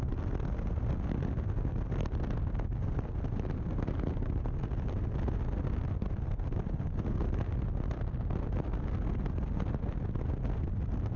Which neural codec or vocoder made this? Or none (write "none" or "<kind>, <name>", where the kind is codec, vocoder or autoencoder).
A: none